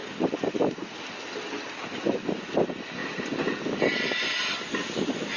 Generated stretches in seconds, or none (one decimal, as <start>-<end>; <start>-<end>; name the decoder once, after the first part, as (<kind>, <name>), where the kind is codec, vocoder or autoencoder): none